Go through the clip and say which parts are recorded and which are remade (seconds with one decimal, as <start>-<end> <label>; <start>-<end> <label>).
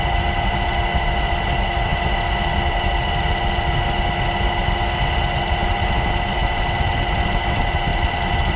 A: 0.0-6.4 recorded; 6.4-6.9 remade; 6.9-7.9 recorded; 7.9-8.6 remade